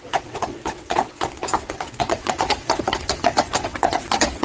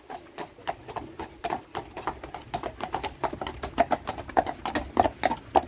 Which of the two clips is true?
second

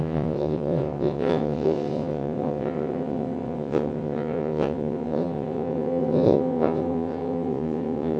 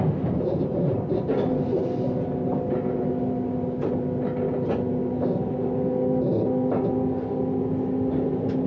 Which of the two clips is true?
second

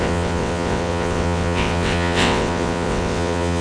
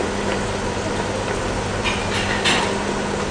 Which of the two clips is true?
second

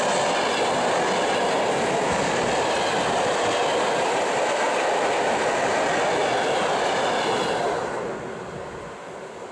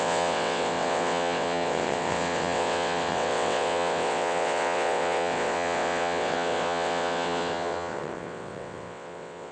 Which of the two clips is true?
first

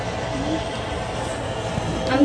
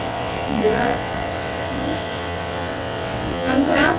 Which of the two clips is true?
first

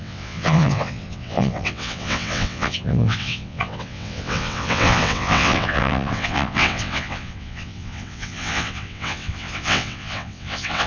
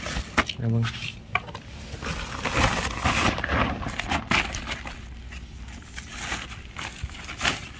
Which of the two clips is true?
second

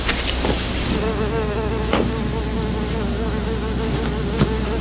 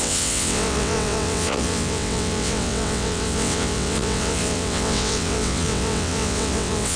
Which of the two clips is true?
first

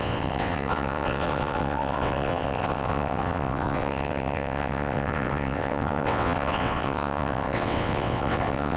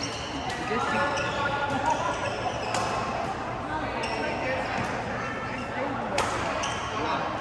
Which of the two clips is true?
second